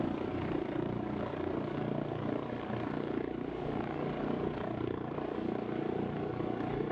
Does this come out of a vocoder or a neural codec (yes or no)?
yes